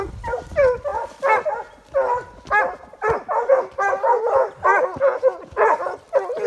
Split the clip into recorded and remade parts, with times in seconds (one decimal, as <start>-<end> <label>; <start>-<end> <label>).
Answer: 0.0-6.5 recorded